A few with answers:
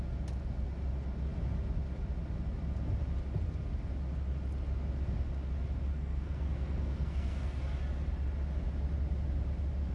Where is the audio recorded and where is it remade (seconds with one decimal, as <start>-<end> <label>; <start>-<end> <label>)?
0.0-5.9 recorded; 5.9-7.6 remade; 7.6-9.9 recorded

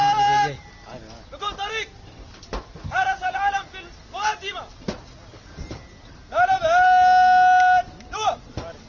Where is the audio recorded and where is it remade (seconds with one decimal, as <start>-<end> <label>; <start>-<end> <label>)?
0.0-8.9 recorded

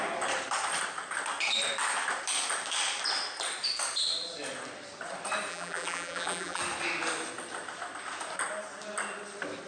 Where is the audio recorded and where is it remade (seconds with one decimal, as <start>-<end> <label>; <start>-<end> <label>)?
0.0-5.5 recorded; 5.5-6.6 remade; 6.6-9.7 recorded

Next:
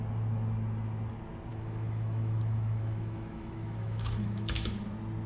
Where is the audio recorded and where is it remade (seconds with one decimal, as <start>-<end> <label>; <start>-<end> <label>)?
0.0-1.5 recorded; 1.5-4.7 remade; 4.7-5.3 recorded